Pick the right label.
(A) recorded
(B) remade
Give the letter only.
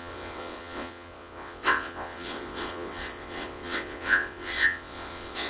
B